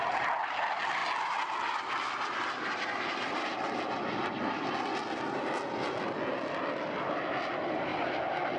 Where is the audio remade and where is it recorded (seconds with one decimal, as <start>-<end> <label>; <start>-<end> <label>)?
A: 0.0-8.6 recorded